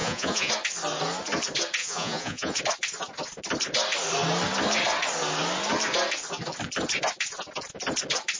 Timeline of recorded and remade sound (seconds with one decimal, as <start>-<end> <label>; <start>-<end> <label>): 0.0-0.5 remade; 0.5-1.8 recorded; 1.8-2.6 remade; 2.6-8.4 recorded